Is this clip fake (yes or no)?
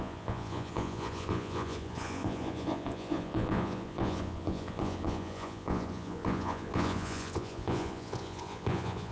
yes